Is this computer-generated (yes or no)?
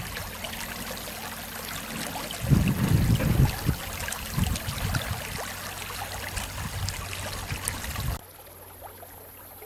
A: no